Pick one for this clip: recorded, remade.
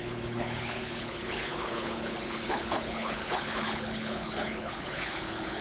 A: remade